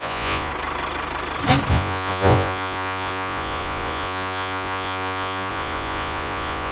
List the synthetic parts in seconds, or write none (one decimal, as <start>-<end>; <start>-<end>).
0.0-0.5; 1.7-6.7